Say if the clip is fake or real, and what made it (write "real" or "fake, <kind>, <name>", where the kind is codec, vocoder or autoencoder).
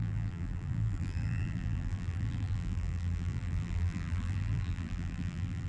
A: fake, vocoder, BigVGAN v2